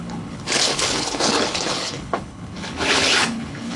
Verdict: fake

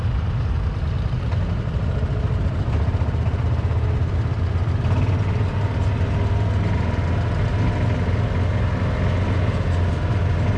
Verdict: real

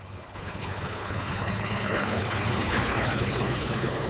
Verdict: fake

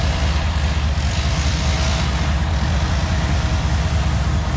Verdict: fake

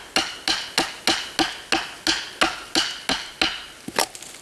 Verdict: real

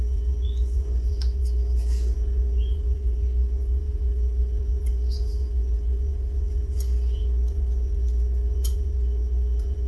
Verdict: fake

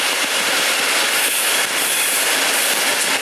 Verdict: real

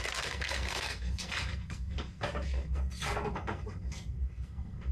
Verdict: fake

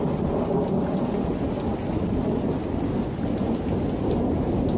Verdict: real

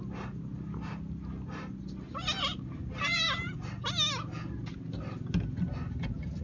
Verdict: real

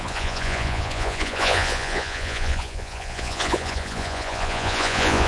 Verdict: fake